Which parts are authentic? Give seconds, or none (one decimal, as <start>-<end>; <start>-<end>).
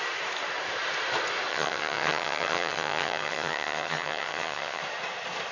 0.0-1.5; 4.8-5.5